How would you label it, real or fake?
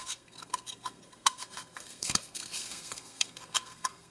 fake